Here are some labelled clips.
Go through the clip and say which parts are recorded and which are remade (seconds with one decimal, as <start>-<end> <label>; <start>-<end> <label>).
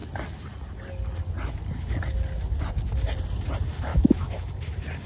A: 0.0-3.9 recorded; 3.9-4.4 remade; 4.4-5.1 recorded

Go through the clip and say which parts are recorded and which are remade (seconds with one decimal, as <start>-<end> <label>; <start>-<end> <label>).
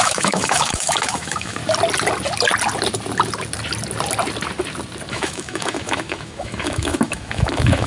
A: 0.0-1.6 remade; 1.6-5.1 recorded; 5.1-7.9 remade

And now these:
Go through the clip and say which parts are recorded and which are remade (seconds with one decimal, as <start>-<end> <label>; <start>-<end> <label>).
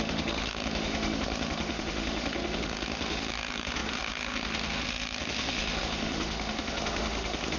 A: 0.0-7.6 remade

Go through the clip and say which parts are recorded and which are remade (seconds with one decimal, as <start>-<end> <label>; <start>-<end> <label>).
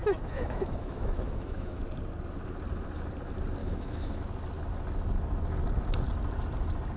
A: 0.0-1.8 remade; 1.8-3.6 recorded; 3.6-4.2 remade; 4.2-7.0 recorded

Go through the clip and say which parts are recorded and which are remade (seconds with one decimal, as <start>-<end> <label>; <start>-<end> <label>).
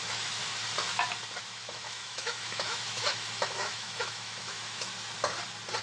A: 0.0-0.4 remade; 0.4-1.4 recorded; 1.4-4.9 remade; 4.9-5.8 recorded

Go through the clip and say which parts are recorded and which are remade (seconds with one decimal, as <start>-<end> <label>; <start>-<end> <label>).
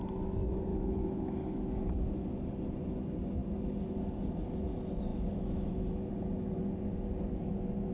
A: 0.0-0.7 recorded; 0.7-1.9 remade; 1.9-5.1 recorded; 5.1-6.1 remade; 6.1-7.9 recorded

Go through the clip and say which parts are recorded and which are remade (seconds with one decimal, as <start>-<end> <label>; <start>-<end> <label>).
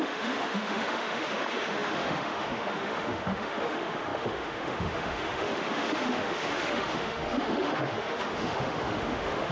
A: 0.0-9.5 remade